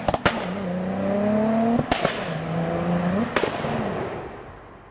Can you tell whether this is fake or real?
real